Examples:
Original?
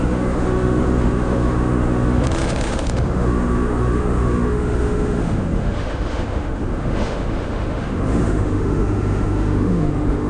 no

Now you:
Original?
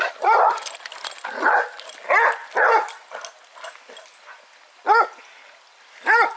yes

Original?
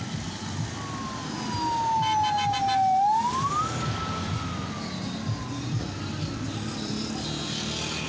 yes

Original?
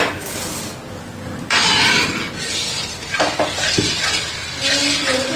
yes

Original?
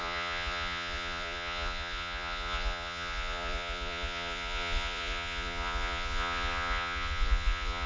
no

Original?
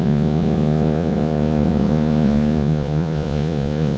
no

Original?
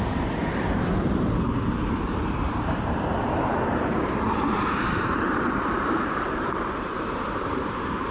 no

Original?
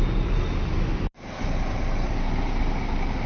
yes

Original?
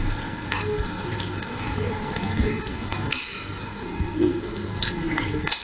no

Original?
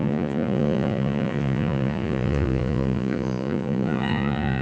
no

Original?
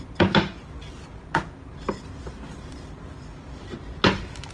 yes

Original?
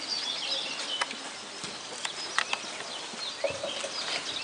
yes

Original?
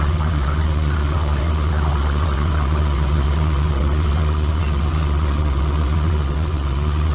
no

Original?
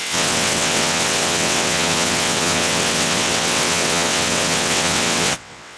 no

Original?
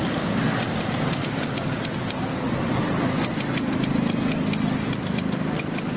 yes